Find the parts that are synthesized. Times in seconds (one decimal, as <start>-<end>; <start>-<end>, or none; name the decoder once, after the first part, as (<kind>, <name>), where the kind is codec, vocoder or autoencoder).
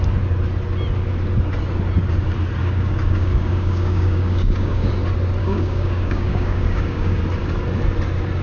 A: 2.6-4.9 (codec, DAC); 5.4-7.2